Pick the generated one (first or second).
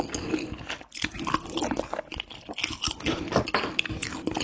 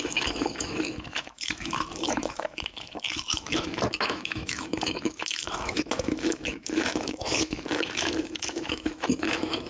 second